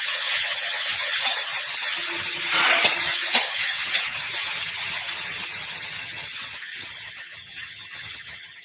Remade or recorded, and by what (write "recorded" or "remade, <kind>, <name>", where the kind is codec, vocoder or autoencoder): remade, vocoder, HiFi-GAN